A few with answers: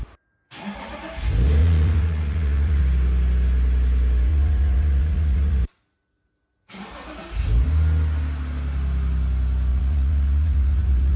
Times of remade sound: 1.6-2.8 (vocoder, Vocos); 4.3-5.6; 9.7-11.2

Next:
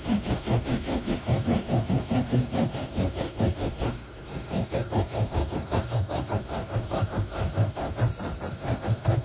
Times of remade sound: 0.0-8.0 (codec, SNAC); 8.5-9.2

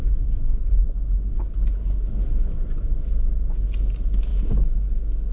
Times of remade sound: none

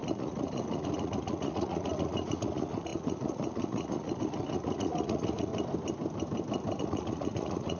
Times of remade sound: 0.0-5.5 (vocoder, Vocos); 6.8-7.8

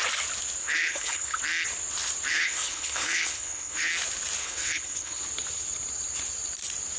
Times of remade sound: 0.6-1.4 (codec, HILCodec); 2.3-3.9; 4.4-5.2